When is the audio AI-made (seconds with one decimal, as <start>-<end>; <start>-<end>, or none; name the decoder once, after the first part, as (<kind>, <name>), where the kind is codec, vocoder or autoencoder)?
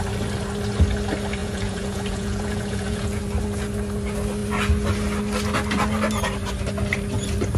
1.4-3.2 (vocoder, Vocos)